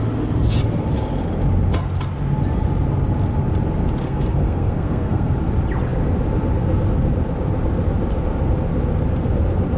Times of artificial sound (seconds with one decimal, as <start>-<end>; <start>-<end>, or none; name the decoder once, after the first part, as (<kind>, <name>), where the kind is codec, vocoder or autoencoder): 4.0-5.3 (codec, SNAC)